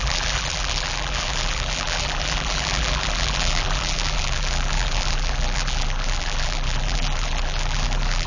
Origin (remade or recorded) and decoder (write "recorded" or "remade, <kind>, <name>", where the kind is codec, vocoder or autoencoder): remade, vocoder, BigVGAN v2